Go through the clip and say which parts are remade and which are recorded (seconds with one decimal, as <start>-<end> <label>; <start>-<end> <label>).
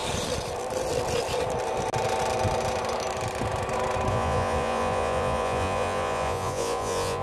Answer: 0.0-4.1 recorded; 4.1-7.2 remade